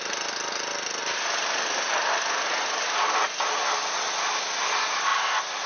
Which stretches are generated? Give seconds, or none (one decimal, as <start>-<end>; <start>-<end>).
1.0-1.9